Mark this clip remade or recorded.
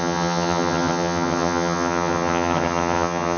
remade